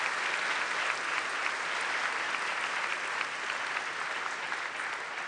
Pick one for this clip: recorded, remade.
recorded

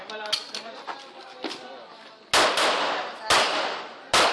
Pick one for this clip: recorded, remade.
recorded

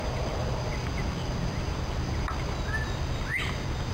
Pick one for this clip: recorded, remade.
recorded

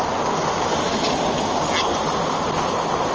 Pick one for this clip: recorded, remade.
recorded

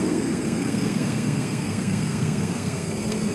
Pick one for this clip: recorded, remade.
remade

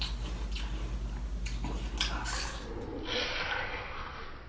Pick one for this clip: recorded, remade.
recorded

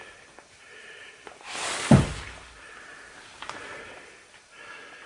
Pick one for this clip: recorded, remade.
recorded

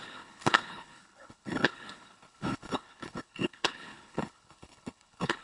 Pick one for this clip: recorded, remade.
remade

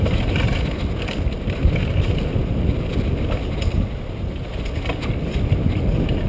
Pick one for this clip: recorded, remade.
recorded